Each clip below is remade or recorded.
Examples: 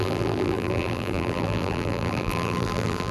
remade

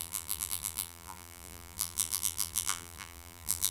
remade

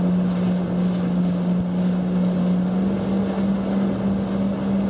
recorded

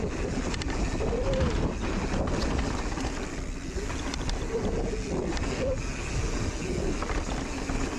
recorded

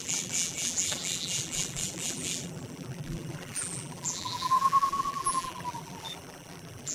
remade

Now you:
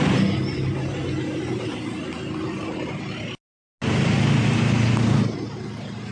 recorded